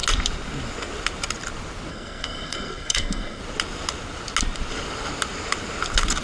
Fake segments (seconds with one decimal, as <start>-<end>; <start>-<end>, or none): 1.9-3.4